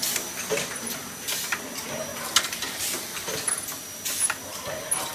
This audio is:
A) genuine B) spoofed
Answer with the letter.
A